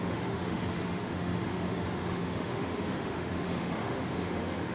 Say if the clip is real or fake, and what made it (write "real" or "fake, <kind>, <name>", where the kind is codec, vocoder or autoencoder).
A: fake, autoencoder, DAC-VAE